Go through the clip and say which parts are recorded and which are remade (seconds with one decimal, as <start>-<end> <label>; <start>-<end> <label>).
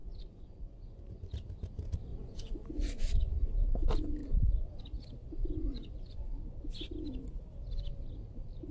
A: 0.0-1.3 remade; 1.3-2.1 recorded; 2.1-3.5 remade; 3.5-5.2 recorded; 5.2-6.3 remade; 6.3-8.7 recorded